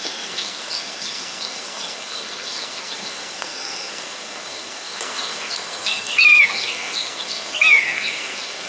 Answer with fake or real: fake